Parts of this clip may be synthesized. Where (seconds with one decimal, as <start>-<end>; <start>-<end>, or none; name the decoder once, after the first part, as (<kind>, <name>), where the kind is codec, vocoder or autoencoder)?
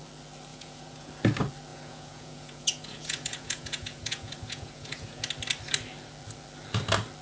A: 0.5-1.1 (vocoder, Vocos); 1.7-5.2